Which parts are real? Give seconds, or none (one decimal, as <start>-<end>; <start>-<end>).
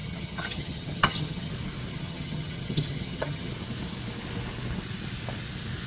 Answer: 1.5-1.9; 3.5-5.9